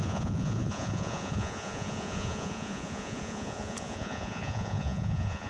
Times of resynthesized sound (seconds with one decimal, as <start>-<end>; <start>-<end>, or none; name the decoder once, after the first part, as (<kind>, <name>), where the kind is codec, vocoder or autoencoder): 0.0-5.5 (vocoder, Vocos)